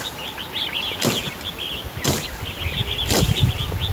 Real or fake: real